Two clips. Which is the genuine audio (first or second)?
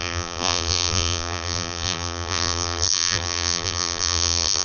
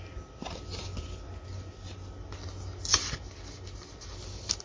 second